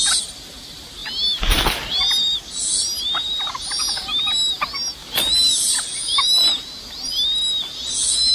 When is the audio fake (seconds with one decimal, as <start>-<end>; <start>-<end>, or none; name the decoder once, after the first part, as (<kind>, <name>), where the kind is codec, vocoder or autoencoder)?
none